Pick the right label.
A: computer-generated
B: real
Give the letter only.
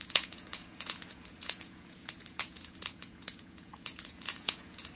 A